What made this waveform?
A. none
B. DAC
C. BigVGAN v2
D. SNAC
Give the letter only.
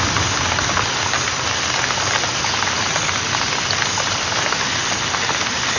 A